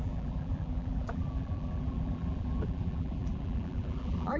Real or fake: fake